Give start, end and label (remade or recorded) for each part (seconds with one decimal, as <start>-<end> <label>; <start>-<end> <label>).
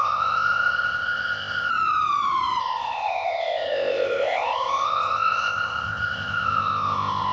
0.0-1.7 remade; 1.7-2.6 recorded; 2.6-7.3 remade